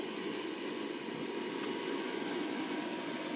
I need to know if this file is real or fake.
fake